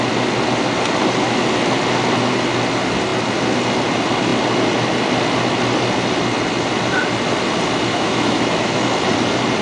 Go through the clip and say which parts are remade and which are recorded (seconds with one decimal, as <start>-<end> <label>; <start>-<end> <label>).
0.0-7.9 recorded; 7.9-8.8 remade; 8.8-9.6 recorded